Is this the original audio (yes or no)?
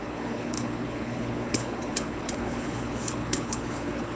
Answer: no